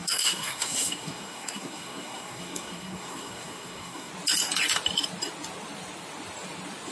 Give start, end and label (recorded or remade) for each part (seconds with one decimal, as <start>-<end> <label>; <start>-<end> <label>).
0.0-4.1 remade; 4.1-6.9 recorded